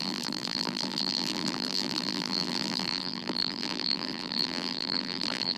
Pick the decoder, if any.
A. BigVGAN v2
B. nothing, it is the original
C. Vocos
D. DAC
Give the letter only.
A